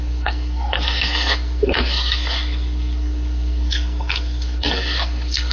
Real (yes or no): no